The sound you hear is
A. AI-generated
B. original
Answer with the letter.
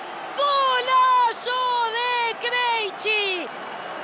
B